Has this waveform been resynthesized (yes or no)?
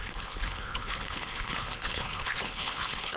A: yes